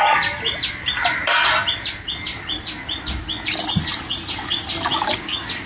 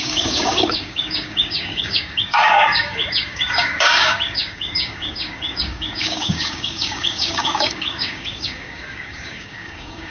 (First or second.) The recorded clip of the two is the first